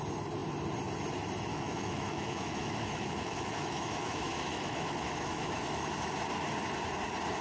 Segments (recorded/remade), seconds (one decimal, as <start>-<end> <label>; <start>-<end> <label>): 0.0-1.5 recorded; 1.5-5.9 remade; 5.9-7.4 recorded